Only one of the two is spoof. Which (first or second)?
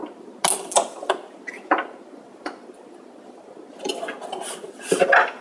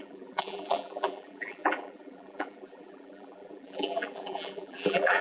second